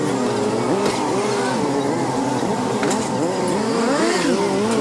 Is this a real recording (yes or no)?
yes